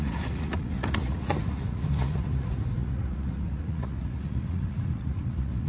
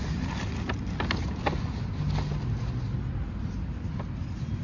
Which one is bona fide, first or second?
second